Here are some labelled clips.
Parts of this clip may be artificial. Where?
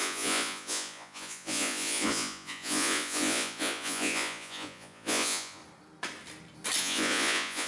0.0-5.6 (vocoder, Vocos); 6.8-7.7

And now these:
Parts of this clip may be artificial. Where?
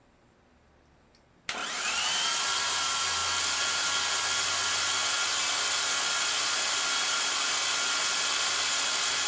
1.6-2.8 (vocoder, BigVGAN v2); 7.0-7.5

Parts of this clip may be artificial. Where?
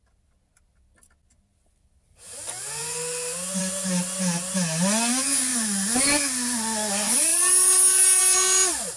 none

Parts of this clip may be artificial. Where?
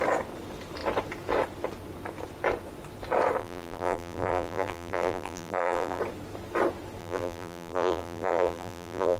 3.4-6.0 (vocoder, BigVGAN v2); 7.0-9.2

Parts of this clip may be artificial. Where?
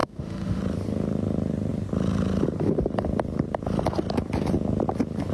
0.0-0.6 (autoencoder, DAC-VAE)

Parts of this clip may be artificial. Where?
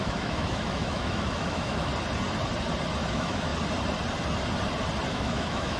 0.0-1.9 (autoencoder, DAC-VAE); 3.1-3.5; 5.1-5.8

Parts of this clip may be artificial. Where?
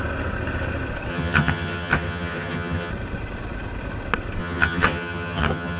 1.1-2.9 (vocoder, HiFi-GAN); 4.4-5.8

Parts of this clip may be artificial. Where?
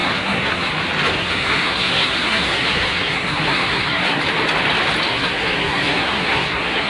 0.0-0.7 (codec, SNAC); 1.2-4.2; 5.1-6.9